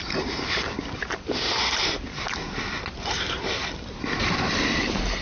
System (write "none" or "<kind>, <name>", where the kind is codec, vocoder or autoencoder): none